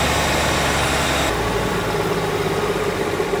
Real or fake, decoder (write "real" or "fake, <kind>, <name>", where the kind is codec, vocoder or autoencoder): real